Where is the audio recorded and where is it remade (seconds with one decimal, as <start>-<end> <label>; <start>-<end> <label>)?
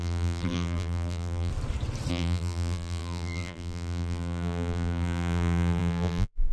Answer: 0.0-1.5 remade; 1.5-2.1 recorded; 2.1-6.5 remade